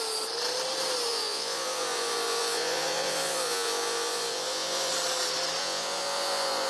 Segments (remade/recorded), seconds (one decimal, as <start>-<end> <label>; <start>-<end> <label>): 0.0-1.1 recorded; 1.1-4.9 remade; 4.9-5.6 recorded; 5.6-6.7 remade